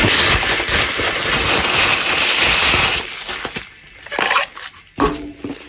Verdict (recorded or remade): recorded